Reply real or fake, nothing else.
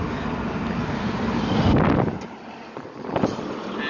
real